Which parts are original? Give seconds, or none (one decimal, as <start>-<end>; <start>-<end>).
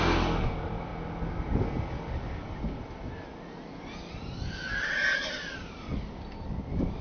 0.9-4.1